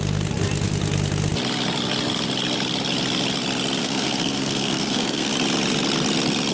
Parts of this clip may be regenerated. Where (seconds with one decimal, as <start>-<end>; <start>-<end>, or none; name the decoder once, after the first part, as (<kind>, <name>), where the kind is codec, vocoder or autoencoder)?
3.8-5.3 (codec, SNAC)